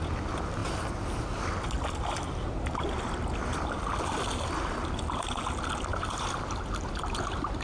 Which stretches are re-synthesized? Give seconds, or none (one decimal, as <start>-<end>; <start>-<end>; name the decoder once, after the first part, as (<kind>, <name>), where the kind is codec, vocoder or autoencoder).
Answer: none